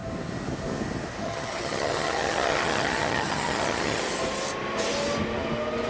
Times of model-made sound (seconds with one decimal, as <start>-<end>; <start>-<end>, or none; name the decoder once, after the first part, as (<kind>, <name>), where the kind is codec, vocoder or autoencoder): 1.2-4.0 (vocoder, HiFi-GAN)